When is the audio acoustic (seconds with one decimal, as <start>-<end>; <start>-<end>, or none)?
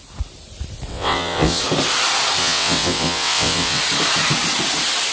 0.0-0.9; 1.6-2.4; 3.8-5.1